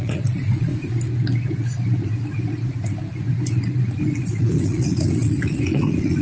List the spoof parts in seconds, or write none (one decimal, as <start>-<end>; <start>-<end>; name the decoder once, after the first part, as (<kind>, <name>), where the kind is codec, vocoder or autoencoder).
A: 0.0-0.7 (vocoder, Vocos); 4.4-6.2